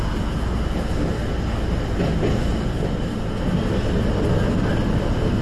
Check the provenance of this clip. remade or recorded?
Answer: recorded